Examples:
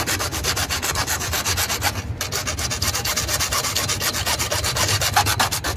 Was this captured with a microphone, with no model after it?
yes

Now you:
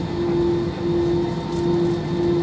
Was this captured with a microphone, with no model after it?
yes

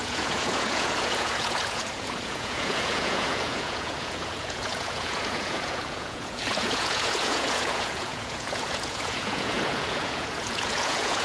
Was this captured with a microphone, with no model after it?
no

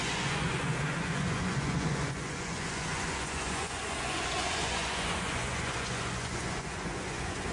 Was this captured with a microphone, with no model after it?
no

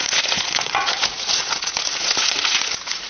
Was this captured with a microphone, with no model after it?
no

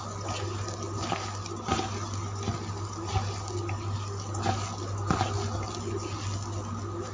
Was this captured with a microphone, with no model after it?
yes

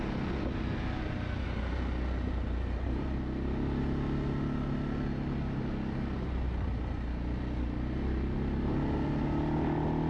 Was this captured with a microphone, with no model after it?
yes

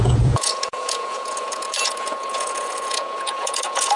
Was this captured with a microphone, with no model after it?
no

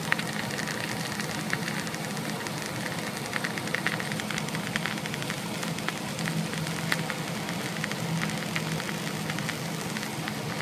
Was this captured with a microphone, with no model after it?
yes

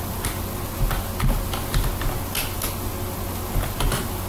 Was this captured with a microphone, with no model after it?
yes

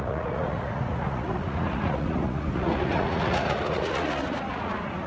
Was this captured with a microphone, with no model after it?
no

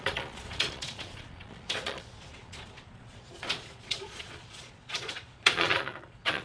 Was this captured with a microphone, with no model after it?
no